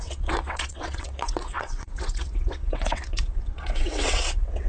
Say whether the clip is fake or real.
fake